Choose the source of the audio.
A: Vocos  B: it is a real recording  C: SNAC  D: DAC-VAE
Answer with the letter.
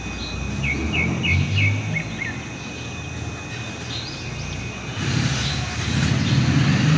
B